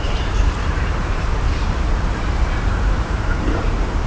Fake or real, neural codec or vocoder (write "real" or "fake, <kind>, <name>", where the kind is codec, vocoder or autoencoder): fake, vocoder, BigVGAN v2